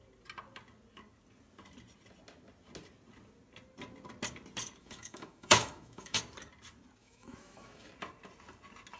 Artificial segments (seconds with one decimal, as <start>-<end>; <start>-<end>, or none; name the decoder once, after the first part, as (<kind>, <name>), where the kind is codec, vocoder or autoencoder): 4.8-6.2 (autoencoder, DAC-VAE); 7.0-7.9